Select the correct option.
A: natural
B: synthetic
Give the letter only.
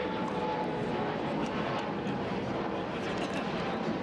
A